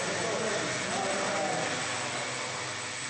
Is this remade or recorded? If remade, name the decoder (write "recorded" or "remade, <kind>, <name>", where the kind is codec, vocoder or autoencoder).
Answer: recorded